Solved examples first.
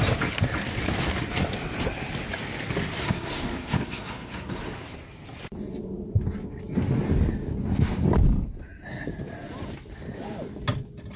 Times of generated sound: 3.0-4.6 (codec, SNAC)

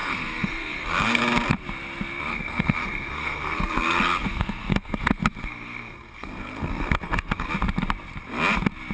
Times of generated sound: 0.0-1.2 (codec, SNAC); 2.3-7.5

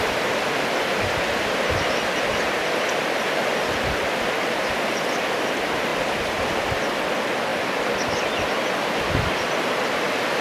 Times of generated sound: none

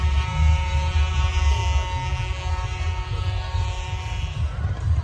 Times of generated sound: 0.0-1.6 (vocoder, BigVGAN v2); 2.5-5.0

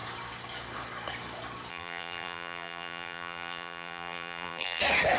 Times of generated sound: 1.7-4.8 (vocoder, BigVGAN v2)